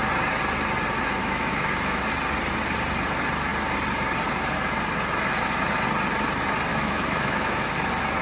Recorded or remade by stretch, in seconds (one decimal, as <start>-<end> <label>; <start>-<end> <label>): 0.0-1.2 recorded; 1.2-2.0 remade; 2.0-6.7 recorded; 6.7-7.7 remade; 7.7-8.2 recorded